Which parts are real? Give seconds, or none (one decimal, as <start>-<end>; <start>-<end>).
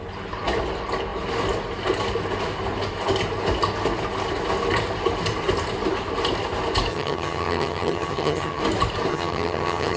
0.0-6.9; 8.6-9.1